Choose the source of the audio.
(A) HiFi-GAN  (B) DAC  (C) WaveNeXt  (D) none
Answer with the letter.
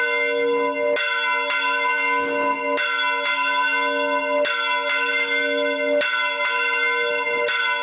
D